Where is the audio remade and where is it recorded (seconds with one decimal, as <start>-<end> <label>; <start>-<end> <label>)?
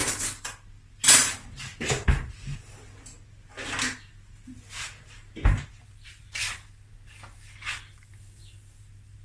0.0-9.2 recorded